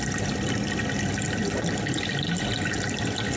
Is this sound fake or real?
real